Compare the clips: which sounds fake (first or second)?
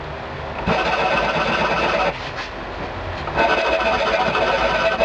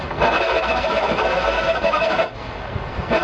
second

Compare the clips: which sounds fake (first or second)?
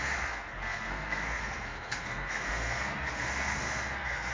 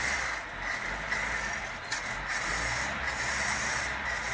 first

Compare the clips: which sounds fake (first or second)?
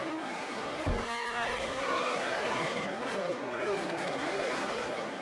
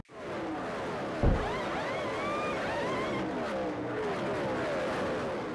first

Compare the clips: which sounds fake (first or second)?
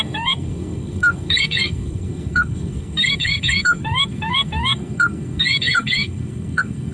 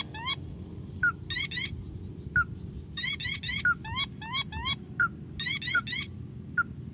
first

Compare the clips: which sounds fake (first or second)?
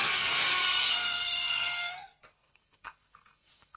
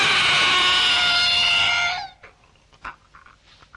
first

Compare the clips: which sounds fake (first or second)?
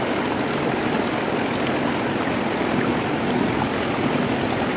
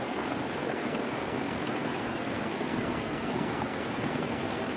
second